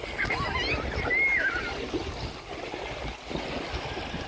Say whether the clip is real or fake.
real